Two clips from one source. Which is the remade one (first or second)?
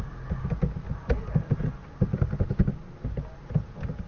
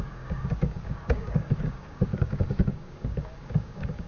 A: second